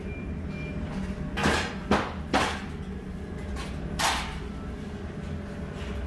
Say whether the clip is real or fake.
real